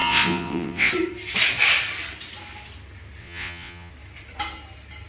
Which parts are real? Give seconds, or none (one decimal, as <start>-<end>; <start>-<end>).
0.9-3.2; 3.9-5.1